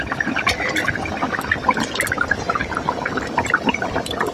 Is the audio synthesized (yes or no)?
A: no